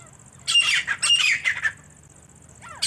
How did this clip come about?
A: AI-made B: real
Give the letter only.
B